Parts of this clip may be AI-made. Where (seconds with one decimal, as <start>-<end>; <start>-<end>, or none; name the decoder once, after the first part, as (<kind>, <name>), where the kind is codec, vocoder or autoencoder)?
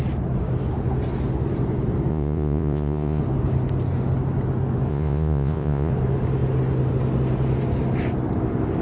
2.1-3.2 (vocoder, Vocos); 4.9-5.9